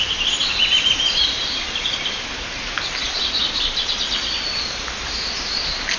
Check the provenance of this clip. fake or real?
real